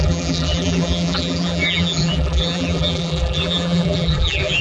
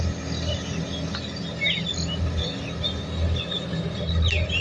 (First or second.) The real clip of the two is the second